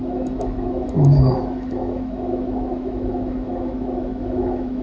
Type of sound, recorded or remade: remade